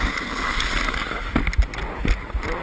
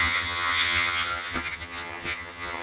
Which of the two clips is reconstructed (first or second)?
second